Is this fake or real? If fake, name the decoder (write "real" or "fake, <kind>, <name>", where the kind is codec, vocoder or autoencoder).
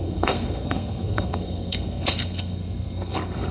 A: fake, codec, SNAC